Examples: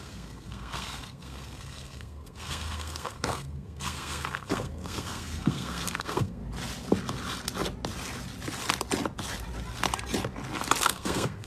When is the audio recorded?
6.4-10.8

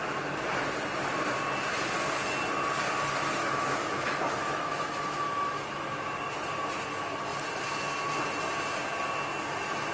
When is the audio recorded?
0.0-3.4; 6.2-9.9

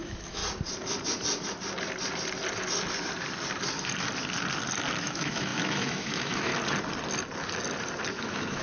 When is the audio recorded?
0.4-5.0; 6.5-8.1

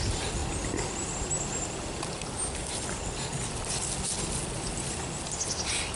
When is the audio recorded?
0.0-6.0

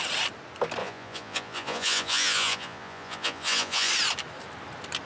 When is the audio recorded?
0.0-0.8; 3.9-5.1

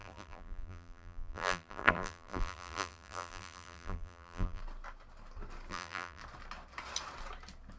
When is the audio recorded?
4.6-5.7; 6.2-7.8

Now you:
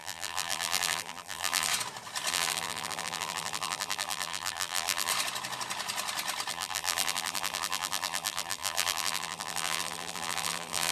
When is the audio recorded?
1.7-2.3; 5.1-6.5

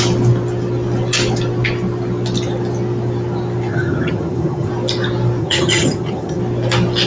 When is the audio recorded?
0.0-3.7; 4.7-5.4; 6.4-7.1